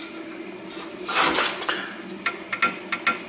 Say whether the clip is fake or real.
real